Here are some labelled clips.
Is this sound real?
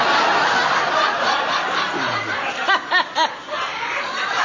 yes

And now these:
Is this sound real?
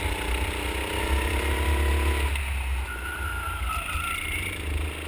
yes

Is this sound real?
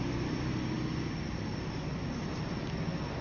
yes